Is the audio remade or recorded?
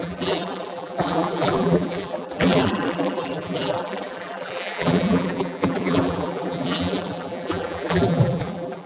remade